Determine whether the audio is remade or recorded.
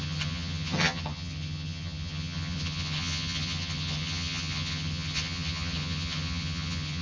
remade